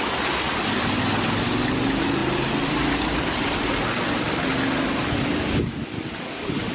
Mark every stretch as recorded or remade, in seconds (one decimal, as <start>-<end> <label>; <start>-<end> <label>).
0.0-6.7 recorded